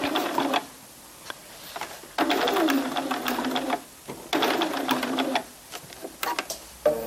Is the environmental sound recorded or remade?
recorded